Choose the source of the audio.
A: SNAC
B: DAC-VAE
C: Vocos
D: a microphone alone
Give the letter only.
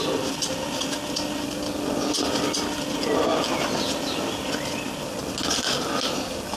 D